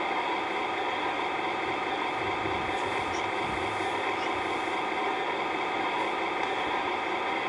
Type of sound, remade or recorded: recorded